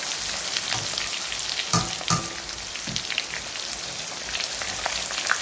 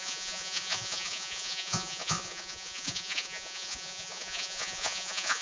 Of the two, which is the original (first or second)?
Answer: first